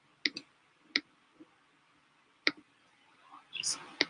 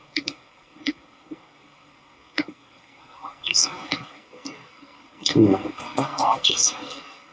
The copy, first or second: second